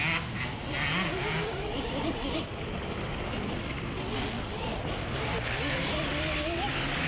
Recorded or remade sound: recorded